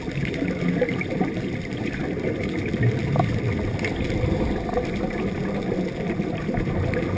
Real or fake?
real